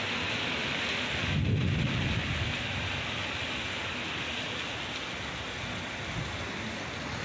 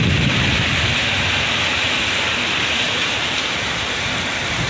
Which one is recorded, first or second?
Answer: first